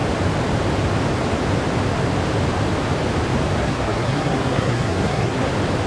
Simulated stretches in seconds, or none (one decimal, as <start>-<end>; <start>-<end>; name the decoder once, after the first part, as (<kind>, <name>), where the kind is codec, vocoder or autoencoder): 3.6-5.5 (codec, SNAC)